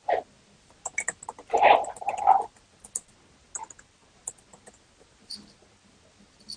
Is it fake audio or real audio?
real